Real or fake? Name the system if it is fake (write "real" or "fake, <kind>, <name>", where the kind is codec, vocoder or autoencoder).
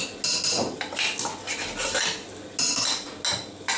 real